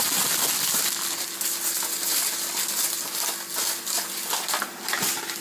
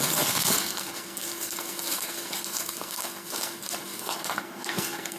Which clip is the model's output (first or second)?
second